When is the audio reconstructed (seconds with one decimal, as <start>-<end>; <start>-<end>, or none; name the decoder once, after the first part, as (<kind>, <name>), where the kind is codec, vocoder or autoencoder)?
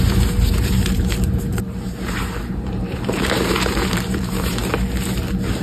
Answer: 0.0-4.6 (vocoder, BigVGAN v2)